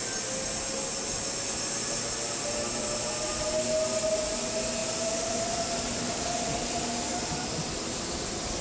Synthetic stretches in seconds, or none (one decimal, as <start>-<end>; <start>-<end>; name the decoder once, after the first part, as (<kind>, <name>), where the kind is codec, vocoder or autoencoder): none